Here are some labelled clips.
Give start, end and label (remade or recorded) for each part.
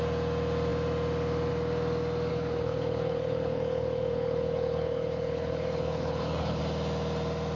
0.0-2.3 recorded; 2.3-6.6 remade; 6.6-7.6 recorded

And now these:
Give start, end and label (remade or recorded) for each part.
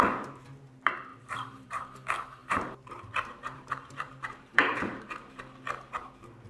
0.0-1.1 recorded; 1.1-1.8 remade; 1.8-2.4 recorded; 2.4-5.4 remade; 5.4-6.5 recorded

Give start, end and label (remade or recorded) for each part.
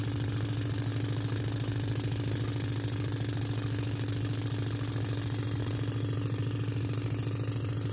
0.0-7.9 recorded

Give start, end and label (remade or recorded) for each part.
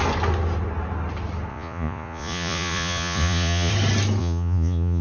0.0-1.5 recorded; 1.5-3.7 remade; 3.7-4.2 recorded; 4.2-5.0 remade